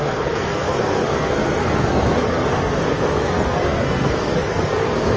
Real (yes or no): no